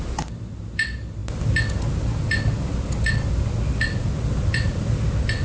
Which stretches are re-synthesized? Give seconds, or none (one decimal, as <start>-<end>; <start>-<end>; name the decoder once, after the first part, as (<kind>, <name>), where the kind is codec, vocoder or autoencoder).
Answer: none